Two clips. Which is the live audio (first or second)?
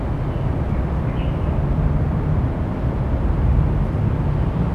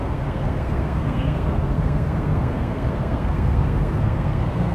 first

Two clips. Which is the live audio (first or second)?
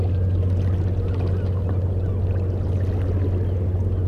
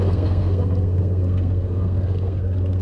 first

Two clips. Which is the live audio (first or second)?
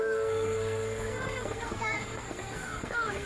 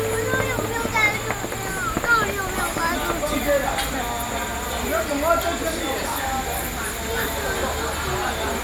second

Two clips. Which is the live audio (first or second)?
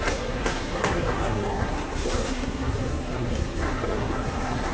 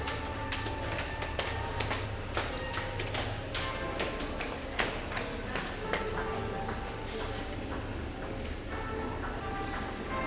second